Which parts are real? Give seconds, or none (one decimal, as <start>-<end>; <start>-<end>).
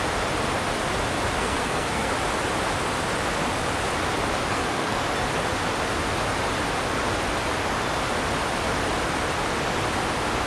0.0-1.4; 2.1-4.5; 5.0-10.5